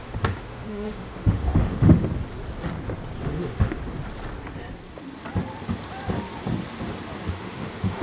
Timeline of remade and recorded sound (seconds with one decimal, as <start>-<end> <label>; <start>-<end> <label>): 0.0-2.0 remade; 2.0-3.2 recorded; 3.2-3.8 remade; 3.8-7.3 recorded; 7.3-8.0 remade